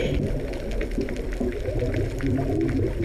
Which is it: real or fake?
real